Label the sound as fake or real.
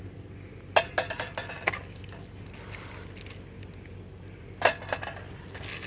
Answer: real